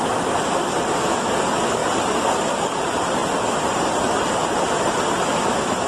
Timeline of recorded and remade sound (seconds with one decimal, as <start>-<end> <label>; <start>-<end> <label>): 0.0-5.9 recorded